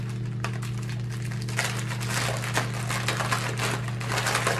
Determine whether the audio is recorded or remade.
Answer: recorded